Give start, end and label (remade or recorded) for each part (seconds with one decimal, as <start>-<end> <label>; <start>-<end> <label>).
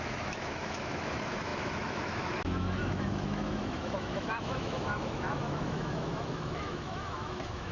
0.0-7.7 remade